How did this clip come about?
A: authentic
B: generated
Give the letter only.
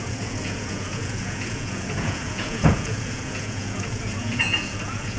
B